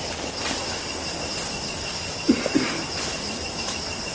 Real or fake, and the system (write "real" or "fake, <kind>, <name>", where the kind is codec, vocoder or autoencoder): real